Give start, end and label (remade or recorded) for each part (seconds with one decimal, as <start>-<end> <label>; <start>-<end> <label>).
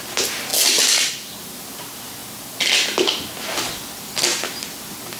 0.0-5.2 recorded